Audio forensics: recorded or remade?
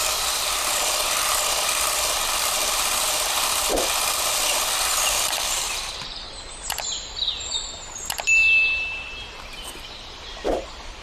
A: remade